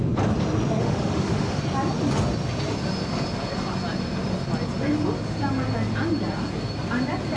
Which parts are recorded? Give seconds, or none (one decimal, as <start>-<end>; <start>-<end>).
0.0-0.8; 1.6-7.4